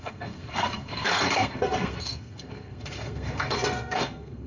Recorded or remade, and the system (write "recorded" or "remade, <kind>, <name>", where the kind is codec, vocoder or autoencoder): remade, codec, SNAC